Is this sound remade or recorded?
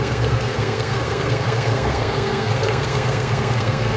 remade